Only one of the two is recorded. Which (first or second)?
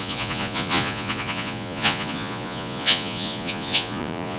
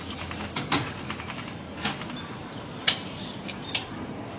second